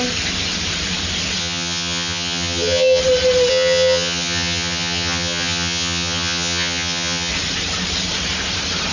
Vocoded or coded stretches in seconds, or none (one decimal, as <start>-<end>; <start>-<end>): 1.4-3.0; 3.5-7.3